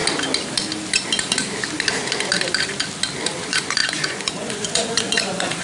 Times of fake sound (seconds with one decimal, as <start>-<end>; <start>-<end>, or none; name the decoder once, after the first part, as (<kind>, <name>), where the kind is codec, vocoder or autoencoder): 3.4-5.6 (vocoder, Vocos)